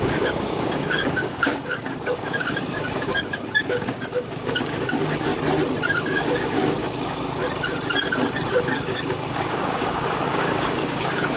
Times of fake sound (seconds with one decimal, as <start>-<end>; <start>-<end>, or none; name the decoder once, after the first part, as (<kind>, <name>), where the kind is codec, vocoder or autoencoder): 0.0-5.3 (codec, DAC); 5.9-7.4; 8.5-11.4